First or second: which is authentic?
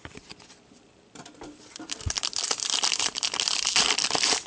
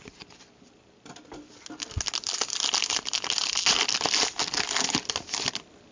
second